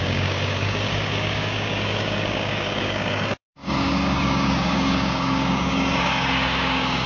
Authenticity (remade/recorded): remade